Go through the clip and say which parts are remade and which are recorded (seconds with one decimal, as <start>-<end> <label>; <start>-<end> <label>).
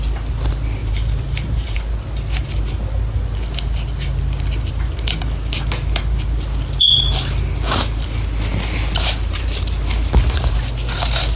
0.0-0.8 recorded; 0.8-1.8 remade; 1.8-11.4 recorded